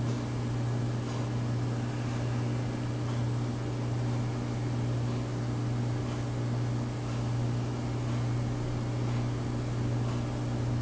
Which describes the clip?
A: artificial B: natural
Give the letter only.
B